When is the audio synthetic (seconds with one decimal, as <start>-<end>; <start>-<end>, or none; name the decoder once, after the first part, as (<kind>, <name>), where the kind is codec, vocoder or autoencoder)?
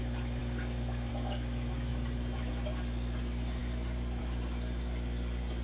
1.9-2.5 (vocoder, BigVGAN v2)